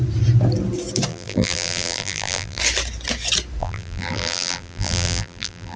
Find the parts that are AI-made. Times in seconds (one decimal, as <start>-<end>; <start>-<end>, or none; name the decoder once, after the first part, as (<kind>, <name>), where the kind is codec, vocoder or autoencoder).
1.1-2.6 (vocoder, BigVGAN v2); 3.6-5.8